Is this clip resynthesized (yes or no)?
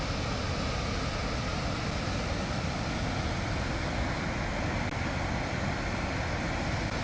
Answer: no